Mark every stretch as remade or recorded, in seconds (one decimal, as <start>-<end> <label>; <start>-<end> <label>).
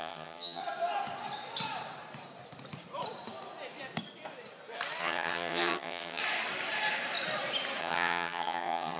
0.0-0.6 remade; 0.6-5.0 recorded; 5.0-6.2 remade; 6.2-7.8 recorded; 7.8-9.0 remade